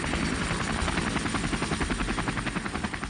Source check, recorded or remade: recorded